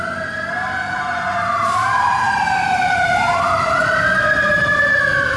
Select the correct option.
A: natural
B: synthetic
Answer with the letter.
B